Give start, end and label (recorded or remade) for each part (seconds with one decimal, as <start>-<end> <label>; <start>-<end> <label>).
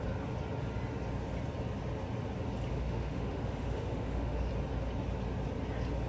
0.0-2.7 recorded; 2.7-4.5 remade; 4.5-6.1 recorded